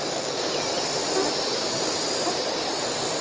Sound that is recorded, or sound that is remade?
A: recorded